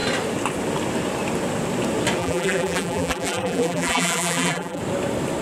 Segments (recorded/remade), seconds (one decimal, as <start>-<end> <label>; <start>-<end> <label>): 0.0-2.2 recorded; 2.2-4.8 remade; 4.8-5.4 recorded